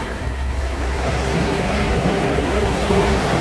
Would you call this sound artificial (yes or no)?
yes